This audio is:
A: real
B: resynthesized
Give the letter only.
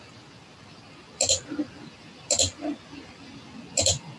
A